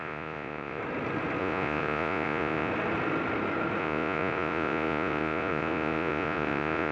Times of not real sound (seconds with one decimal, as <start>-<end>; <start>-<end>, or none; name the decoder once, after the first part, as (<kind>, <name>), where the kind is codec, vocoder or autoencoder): 0.0-0.8 (vocoder, Vocos); 1.4-2.7; 3.8-6.9